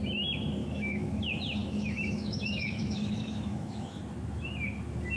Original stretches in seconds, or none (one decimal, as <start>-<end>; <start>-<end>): 0.0-0.6; 1.2-1.6; 4.0-5.2